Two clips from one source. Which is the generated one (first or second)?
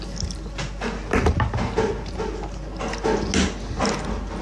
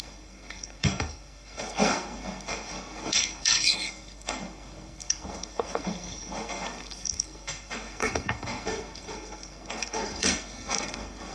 second